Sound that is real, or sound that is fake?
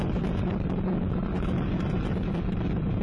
real